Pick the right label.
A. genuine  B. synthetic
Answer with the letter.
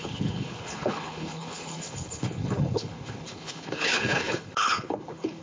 B